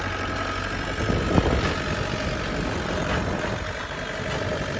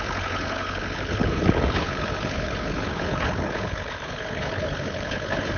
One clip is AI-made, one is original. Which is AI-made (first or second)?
second